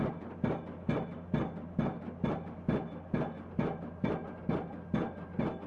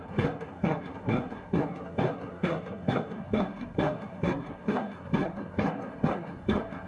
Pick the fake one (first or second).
second